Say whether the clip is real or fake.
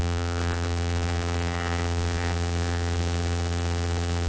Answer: fake